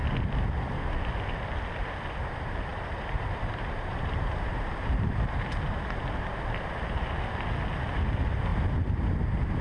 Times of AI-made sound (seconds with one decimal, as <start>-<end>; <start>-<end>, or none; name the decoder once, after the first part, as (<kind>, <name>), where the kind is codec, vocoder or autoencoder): 2.7-6.7 (vocoder, BigVGAN v2); 8.5-9.6